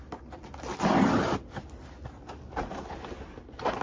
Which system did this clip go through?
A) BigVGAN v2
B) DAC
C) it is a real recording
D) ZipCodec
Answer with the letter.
C